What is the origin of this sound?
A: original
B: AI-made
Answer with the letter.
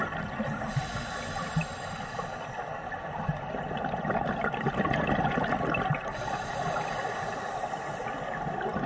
A